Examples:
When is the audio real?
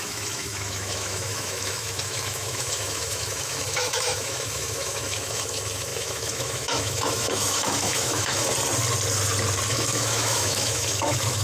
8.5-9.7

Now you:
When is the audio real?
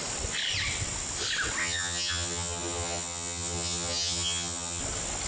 0.0-1.6; 4.8-5.3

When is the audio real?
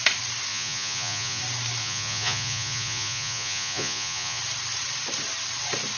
0.0-0.5; 1.4-1.8; 4.4-6.0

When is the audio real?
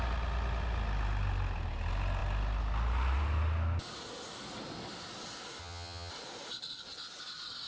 0.0-5.6; 6.1-7.7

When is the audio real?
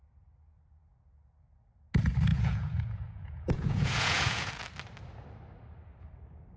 0.0-2.3; 4.5-6.6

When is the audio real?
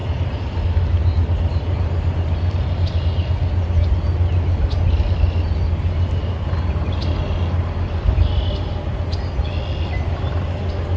0.0-11.0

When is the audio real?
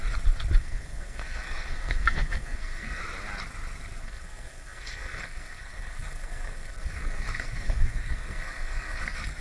0.0-0.6; 3.0-4.0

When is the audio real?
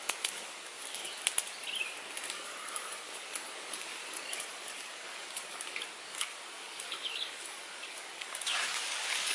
1.0-2.3; 4.0-4.5